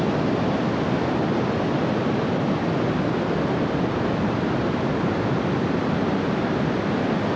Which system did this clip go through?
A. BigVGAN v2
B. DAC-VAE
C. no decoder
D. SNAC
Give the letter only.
C